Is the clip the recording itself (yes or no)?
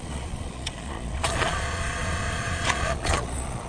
no